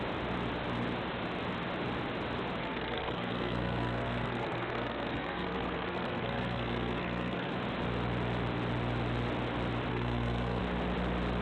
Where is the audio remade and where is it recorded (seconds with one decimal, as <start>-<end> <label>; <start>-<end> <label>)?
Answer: 0.0-2.6 recorded; 2.6-7.5 remade; 7.5-9.9 recorded; 9.9-10.6 remade; 10.6-11.4 recorded